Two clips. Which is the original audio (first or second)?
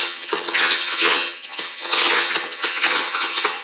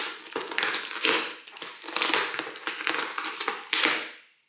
second